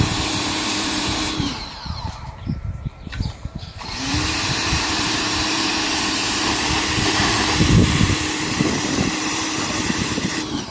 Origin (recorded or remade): remade